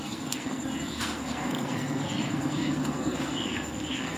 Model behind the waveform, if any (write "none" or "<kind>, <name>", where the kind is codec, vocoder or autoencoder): codec, SNAC